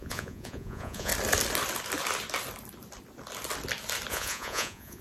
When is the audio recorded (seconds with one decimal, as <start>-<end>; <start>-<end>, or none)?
1.1-4.1